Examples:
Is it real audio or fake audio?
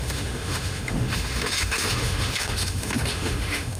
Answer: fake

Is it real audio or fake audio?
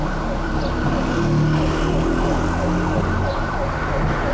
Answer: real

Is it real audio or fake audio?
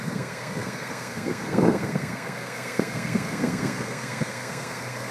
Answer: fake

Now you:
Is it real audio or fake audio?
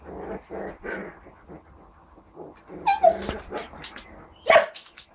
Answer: real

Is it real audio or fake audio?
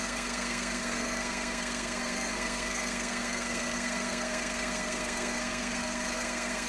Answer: fake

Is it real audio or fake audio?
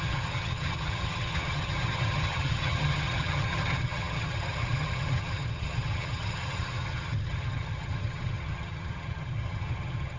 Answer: fake